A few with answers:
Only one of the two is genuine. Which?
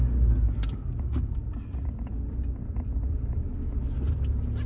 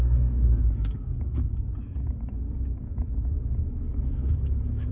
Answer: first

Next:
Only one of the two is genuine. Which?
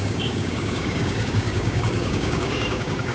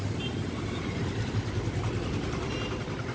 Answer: second